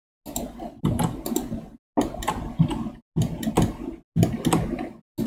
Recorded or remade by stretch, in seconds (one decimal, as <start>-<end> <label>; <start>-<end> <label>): 0.0-5.3 recorded